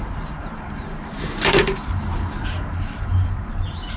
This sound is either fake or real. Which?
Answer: fake